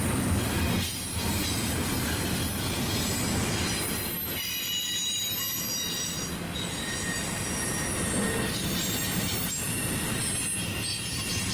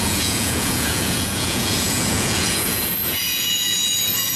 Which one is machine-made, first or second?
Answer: second